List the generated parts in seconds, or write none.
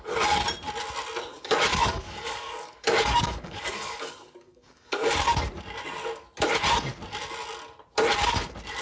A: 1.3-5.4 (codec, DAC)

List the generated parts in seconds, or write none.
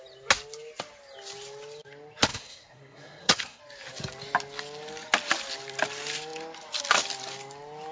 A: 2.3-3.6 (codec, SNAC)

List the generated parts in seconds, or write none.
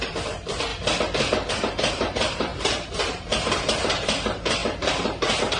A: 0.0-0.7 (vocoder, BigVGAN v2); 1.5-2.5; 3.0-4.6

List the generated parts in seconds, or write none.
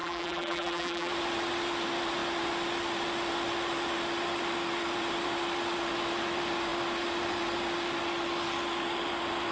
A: 0.0-1.1 (vocoder, BigVGAN v2)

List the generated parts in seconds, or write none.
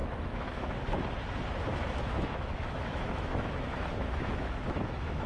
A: 0.0-1.0 (autoencoder, DAC-VAE); 1.7-5.3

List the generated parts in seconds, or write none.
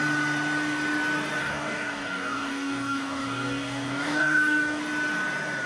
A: 1.4-4.8 (codec, DAC)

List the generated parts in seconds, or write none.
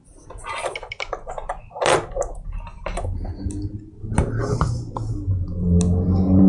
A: none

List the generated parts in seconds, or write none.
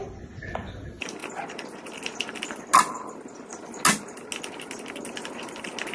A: none